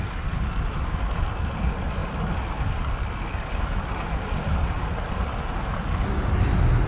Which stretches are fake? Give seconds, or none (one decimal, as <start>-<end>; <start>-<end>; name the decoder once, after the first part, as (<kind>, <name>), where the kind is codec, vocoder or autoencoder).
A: none